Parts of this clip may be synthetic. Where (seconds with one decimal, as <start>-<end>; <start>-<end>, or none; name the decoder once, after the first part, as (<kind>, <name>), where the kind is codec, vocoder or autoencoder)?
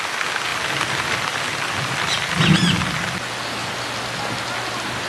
0.5-2.5 (vocoder, BigVGAN v2); 3.6-4.2